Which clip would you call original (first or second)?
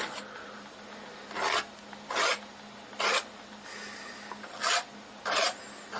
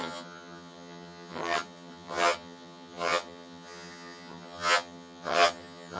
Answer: first